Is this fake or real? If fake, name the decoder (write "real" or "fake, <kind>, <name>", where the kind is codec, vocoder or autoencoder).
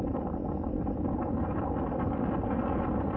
real